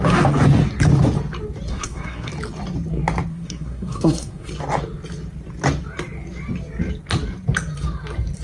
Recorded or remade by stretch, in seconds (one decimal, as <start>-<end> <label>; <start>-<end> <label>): 0.0-1.7 recorded; 1.7-2.3 remade; 2.3-3.3 recorded; 3.3-4.5 remade; 4.5-8.4 recorded